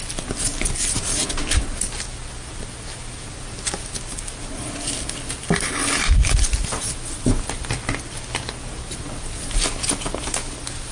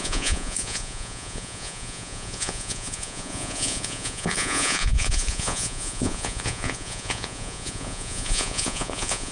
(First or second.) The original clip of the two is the first